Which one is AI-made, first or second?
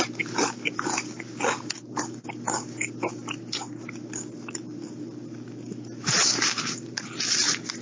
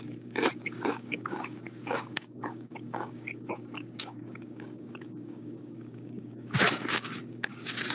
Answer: second